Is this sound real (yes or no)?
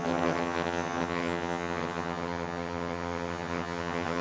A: no